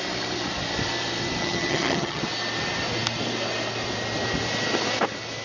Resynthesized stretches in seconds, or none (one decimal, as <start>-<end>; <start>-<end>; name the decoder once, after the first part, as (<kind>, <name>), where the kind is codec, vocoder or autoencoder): 1.4-2.2 (vocoder, HiFi-GAN)